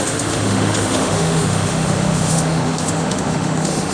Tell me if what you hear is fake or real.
fake